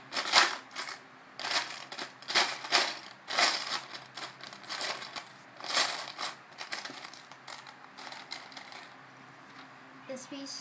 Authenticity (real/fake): fake